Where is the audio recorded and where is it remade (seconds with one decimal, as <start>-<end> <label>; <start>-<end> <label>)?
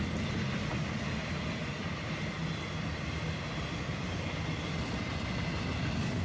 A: 0.0-6.2 recorded